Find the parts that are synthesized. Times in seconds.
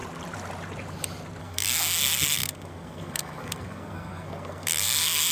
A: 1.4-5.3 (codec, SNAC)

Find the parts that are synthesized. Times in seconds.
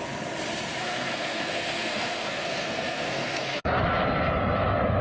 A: 0.8-3.8 (codec, SNAC)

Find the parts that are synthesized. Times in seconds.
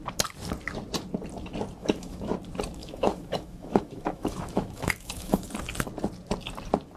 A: 1.8-2.3 (autoencoder, DAC-VAE); 2.8-5.5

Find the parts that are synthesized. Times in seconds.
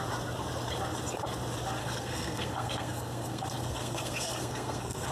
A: 1.8-5.1 (codec, SNAC)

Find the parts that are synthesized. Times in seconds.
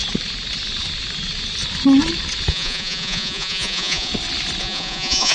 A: 2.5-4.1 (vocoder, Vocos); 4.6-5.3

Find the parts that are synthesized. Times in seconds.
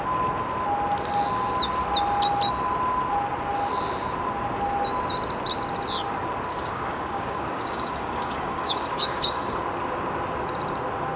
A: 6.5-9.6 (codec, DAC)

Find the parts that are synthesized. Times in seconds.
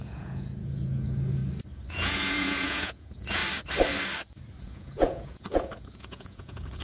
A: 0.0-1.4 (vocoder, Vocos); 1.9-3.4; 4.6-6.8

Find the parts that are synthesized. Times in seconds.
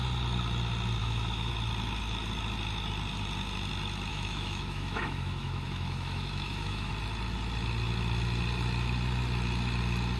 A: 1.0-1.5 (autoencoder, DAC-VAE); 4.1-6.9